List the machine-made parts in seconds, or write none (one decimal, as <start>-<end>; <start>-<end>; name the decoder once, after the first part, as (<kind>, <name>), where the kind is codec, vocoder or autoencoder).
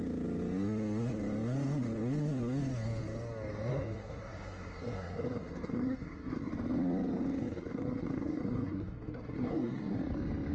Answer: 3.7-6.5 (codec, SNAC); 7.4-10.0